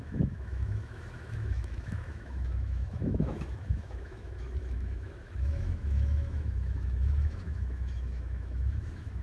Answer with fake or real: fake